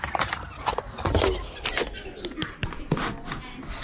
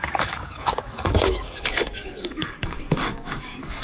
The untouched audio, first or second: first